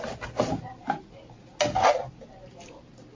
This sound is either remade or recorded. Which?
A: recorded